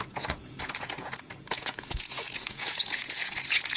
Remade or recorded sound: remade